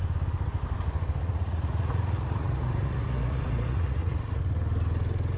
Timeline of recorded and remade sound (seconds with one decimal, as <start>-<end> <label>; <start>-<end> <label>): 0.0-1.2 recorded; 1.2-4.4 remade; 4.4-5.4 recorded